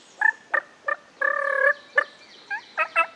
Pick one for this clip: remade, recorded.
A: recorded